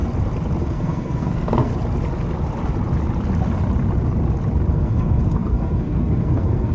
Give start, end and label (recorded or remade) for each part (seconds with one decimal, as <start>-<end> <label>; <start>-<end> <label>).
0.0-0.6 recorded; 0.6-1.7 remade; 1.7-4.7 recorded; 4.7-6.7 remade